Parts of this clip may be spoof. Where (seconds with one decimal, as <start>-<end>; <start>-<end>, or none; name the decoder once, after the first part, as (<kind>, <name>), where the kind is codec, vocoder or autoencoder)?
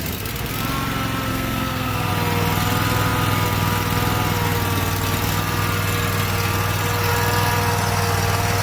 1.3-2.1 (codec, SNAC)